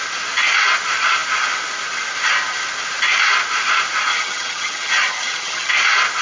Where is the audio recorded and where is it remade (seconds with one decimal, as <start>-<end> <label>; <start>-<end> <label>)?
0.0-4.1 recorded; 4.1-5.7 remade; 5.7-6.2 recorded